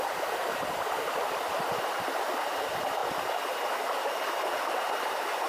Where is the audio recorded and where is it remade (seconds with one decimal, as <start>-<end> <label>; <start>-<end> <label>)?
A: 0.0-5.5 recorded